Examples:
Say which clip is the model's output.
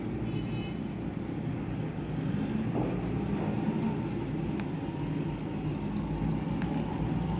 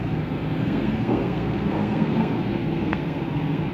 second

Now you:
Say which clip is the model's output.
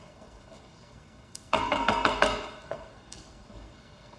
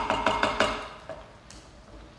first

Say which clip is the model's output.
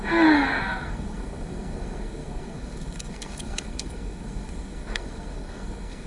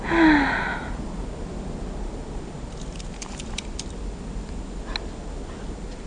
first